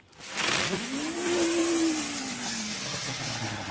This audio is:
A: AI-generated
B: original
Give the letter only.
B